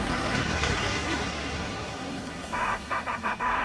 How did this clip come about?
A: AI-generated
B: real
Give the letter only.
A